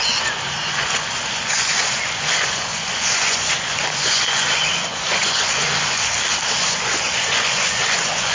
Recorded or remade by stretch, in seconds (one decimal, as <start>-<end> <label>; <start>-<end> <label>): 0.0-6.1 remade; 6.1-6.6 recorded; 6.6-8.3 remade